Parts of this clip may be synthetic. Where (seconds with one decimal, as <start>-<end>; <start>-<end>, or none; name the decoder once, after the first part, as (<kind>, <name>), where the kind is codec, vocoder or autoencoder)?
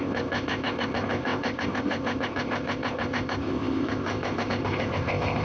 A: 0.0-5.4 (codec, ZipCodec)